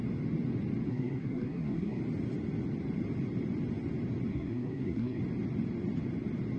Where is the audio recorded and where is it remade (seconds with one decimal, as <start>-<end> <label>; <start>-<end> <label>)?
0.0-0.9 recorded; 0.9-2.0 remade; 2.0-4.3 recorded; 4.3-5.2 remade; 5.2-6.6 recorded